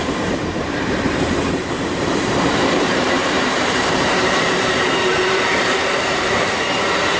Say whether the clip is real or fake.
fake